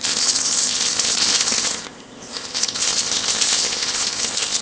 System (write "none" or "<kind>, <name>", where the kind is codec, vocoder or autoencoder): codec, ZipCodec